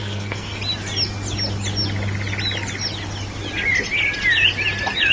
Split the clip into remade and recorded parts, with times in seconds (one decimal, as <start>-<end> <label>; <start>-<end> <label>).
0.0-0.6 remade; 0.6-5.1 recorded